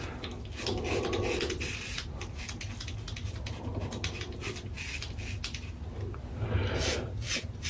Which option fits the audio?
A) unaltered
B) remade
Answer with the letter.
A